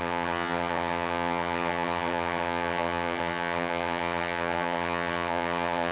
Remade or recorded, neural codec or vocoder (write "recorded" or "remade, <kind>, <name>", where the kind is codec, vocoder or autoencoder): remade, vocoder, HiFi-GAN